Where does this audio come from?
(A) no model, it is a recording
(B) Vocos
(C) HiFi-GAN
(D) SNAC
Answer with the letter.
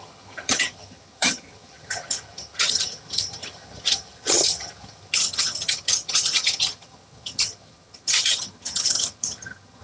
C